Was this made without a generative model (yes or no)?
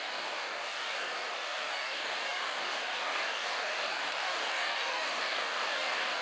no